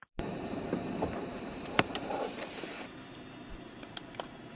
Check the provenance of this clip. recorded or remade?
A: remade